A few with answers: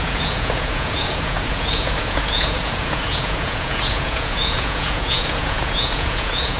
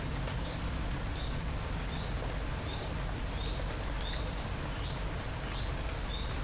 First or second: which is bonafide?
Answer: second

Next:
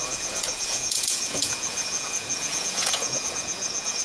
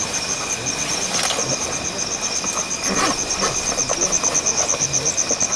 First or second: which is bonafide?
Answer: second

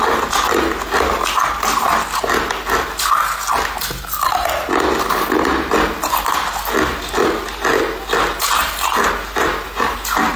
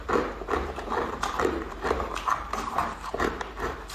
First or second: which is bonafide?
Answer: first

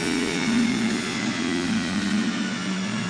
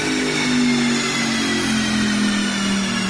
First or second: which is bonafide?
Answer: second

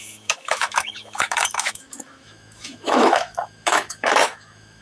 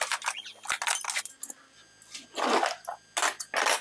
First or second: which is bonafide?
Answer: second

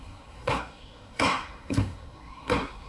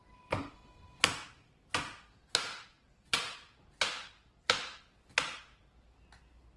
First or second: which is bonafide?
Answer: second